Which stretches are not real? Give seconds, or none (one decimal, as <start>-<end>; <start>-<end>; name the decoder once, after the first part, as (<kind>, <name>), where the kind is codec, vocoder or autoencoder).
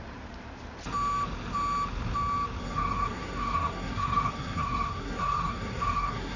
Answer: 2.6-6.4 (codec, SNAC)